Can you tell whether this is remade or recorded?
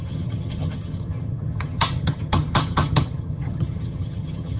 remade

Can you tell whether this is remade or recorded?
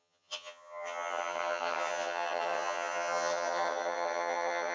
remade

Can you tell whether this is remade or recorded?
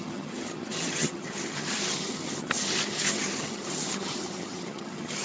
remade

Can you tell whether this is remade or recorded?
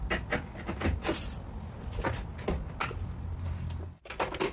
recorded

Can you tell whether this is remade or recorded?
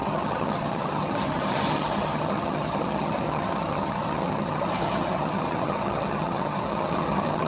remade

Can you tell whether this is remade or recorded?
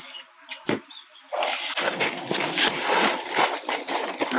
recorded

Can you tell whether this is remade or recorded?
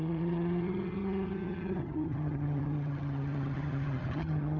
remade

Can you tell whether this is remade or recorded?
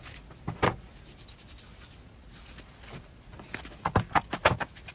recorded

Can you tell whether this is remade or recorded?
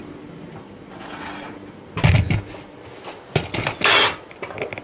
recorded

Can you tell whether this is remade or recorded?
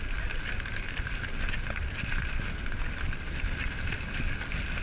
recorded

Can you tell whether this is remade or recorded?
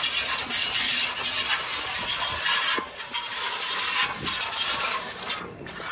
recorded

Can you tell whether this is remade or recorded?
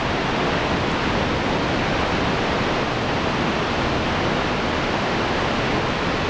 recorded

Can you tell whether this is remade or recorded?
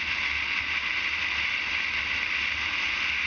recorded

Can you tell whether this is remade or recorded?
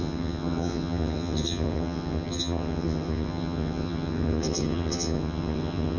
remade